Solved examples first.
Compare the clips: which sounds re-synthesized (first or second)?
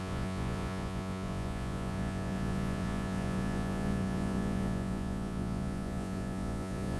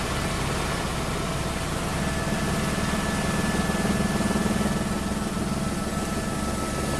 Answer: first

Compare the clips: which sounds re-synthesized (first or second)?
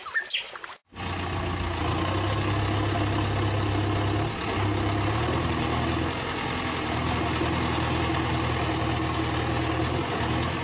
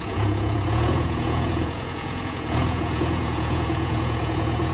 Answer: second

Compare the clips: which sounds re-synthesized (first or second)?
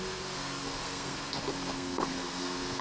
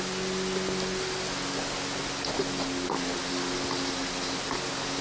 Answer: first